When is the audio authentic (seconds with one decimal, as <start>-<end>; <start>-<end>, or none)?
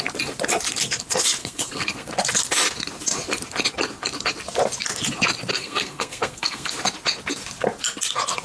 0.0-1.4; 2.1-5.5; 6.7-8.4